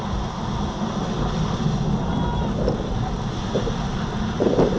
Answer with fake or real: real